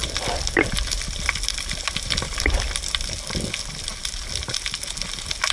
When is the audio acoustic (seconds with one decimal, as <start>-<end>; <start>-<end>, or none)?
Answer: 3.3-3.9; 4.5-5.5